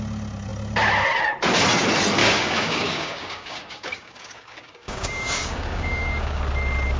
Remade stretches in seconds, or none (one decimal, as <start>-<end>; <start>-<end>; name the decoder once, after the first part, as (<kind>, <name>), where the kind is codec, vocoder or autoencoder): 2.2-6.4 (codec, DAC)